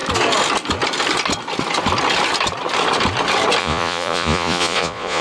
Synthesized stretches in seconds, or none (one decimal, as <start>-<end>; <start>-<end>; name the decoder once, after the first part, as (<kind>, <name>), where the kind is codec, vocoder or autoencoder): 3.6-5.2 (vocoder, Vocos)

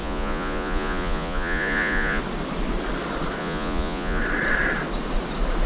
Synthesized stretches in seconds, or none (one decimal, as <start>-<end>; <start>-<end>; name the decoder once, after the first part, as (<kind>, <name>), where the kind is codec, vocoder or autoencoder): 0.0-2.2 (vocoder, Vocos); 3.4-4.2

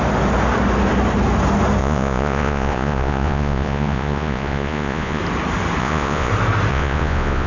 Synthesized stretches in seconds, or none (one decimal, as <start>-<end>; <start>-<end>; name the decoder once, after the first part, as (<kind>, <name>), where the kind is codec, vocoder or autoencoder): 1.8-5.2 (vocoder, Vocos); 5.8-6.3; 6.7-7.5

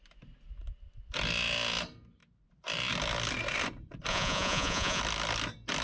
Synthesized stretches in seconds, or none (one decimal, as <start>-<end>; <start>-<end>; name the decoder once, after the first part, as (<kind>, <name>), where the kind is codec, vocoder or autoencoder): 4.1-5.0 (vocoder, Vocos)

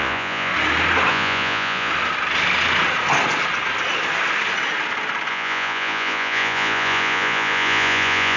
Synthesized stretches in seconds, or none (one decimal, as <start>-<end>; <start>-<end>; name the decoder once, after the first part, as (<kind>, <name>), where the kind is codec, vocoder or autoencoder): 0.0-0.5 (vocoder, Vocos); 1.1-1.9; 5.3-8.4